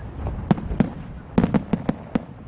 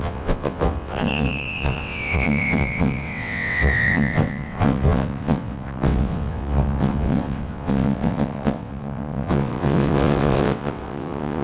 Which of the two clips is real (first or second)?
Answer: first